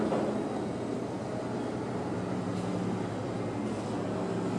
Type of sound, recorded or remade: recorded